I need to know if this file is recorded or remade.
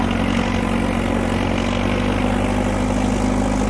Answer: recorded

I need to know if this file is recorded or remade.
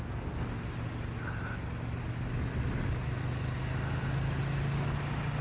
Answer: recorded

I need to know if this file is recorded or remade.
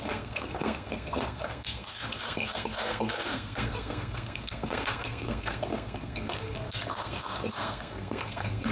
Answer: remade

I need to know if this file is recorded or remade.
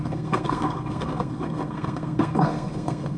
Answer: remade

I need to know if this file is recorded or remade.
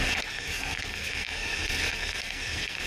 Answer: remade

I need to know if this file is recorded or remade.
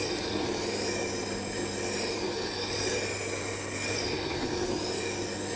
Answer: recorded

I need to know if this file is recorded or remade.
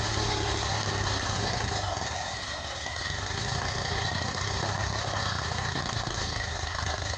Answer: remade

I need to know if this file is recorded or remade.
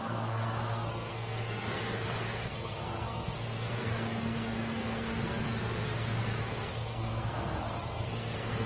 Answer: remade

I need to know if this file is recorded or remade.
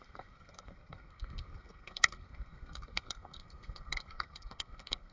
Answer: remade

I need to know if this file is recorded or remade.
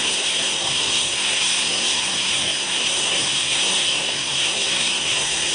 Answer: remade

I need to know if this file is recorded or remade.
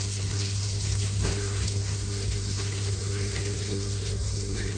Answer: remade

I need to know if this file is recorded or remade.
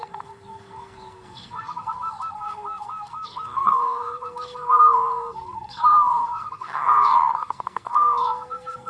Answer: remade